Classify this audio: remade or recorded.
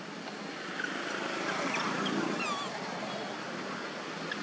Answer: recorded